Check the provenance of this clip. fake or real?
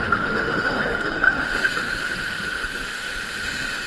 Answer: fake